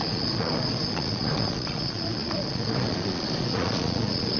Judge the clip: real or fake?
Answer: fake